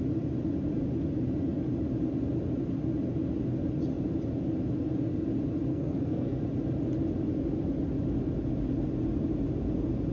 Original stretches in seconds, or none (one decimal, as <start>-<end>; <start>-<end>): 0.0-5.7; 6.4-10.1